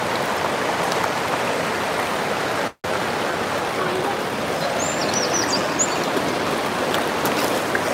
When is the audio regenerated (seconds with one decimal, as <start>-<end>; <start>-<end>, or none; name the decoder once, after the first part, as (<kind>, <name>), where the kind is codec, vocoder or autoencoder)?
none